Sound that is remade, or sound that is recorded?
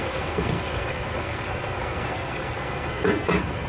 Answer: remade